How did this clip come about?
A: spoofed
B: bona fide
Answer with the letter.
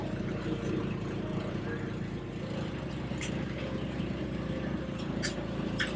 B